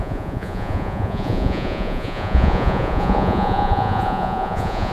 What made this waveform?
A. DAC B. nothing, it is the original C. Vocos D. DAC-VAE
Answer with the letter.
C